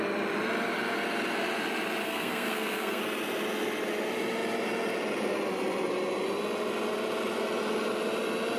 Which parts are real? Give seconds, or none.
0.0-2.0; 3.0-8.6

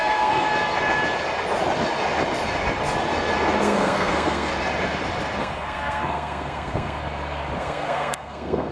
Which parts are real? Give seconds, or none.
0.5-3.6; 4.5-5.4; 7.0-7.6

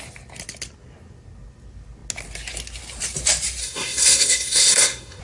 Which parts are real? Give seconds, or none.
0.0-3.6

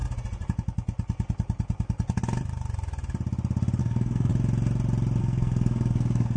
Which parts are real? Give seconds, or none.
0.0-3.8; 4.3-5.2

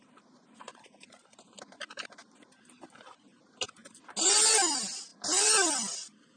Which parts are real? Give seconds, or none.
0.0-6.4

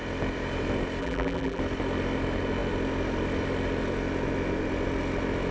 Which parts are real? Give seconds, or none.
0.0-1.0; 1.6-5.5

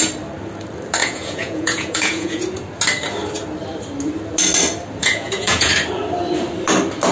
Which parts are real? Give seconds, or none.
0.0-1.0; 2.4-5.0; 5.7-7.1